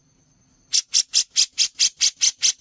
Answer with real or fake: real